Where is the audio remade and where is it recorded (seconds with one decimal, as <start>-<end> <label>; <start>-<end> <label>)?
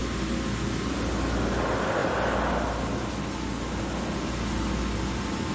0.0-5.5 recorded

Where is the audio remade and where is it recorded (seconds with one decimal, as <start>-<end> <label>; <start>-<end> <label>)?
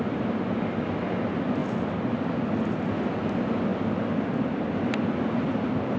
0.0-6.0 recorded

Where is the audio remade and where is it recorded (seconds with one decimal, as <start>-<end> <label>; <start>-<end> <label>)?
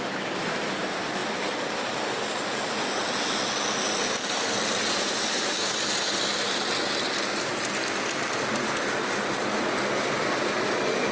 0.0-11.1 recorded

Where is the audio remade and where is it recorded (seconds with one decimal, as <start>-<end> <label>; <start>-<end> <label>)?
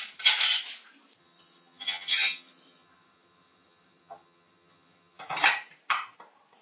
0.0-1.2 recorded; 1.2-5.2 remade; 5.2-6.6 recorded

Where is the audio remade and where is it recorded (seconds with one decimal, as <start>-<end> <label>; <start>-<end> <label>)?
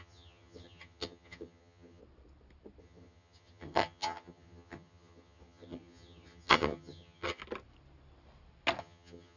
0.0-2.0 remade; 2.0-2.8 recorded; 2.8-7.4 remade; 7.4-8.8 recorded; 8.8-9.4 remade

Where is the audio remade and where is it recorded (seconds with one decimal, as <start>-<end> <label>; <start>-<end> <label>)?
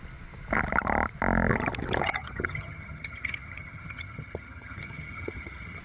0.0-2.0 recorded; 2.0-5.8 remade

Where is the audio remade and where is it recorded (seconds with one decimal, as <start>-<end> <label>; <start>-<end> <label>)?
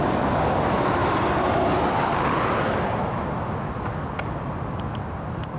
0.0-5.6 recorded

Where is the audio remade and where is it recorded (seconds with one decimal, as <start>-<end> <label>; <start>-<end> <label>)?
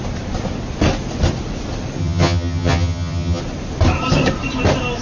0.0-2.0 recorded; 2.0-3.4 remade; 3.4-5.0 recorded